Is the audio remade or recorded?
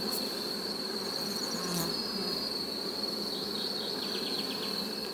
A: recorded